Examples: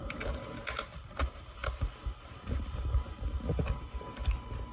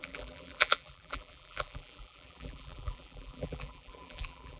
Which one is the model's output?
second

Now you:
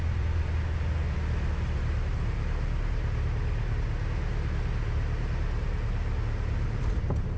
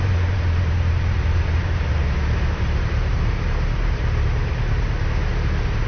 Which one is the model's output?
second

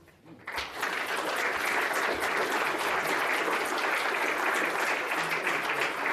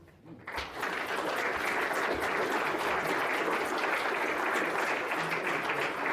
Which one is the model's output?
first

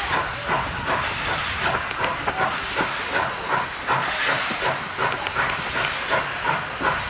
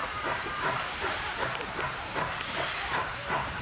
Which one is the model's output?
second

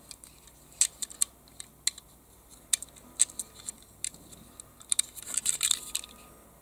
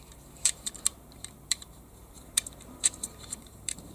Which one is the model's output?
second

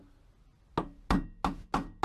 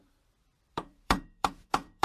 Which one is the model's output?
second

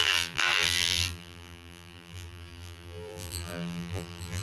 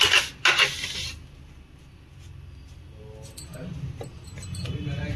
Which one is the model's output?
first